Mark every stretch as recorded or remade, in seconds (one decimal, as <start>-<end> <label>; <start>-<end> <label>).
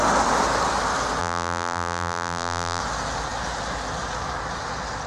0.0-1.2 recorded; 1.2-2.8 remade; 2.8-5.1 recorded